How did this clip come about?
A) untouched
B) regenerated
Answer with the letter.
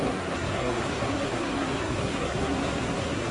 B